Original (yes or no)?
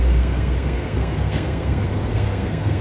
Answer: no